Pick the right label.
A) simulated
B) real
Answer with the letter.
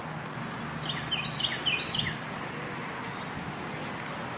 B